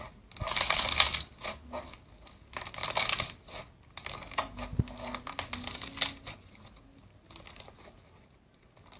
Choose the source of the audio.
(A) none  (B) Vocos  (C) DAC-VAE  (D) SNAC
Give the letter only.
A